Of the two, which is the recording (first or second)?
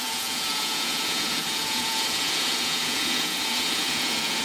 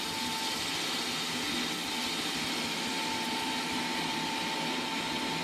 second